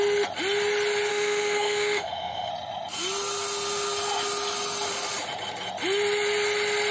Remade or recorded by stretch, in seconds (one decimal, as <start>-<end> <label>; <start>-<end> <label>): 0.0-1.1 recorded; 1.1-2.5 remade; 2.5-6.9 recorded